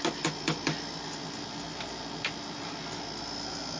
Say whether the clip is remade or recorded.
recorded